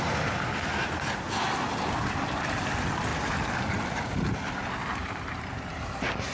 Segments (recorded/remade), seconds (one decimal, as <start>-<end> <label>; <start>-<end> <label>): 0.0-5.0 recorded; 5.0-5.7 remade; 5.7-6.3 recorded